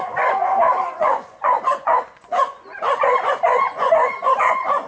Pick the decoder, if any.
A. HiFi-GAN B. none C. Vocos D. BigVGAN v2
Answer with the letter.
C